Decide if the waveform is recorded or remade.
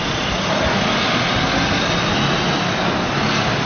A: recorded